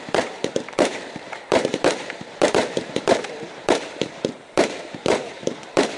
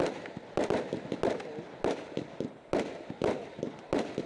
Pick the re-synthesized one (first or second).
first